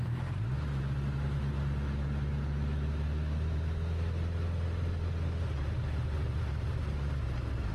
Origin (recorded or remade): recorded